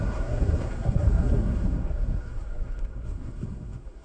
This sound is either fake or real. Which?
fake